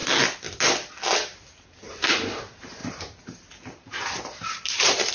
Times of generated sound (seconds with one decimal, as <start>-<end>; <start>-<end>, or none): 1.9-5.1